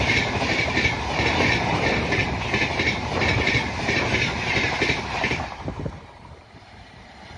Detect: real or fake fake